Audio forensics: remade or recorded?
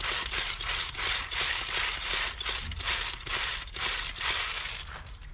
recorded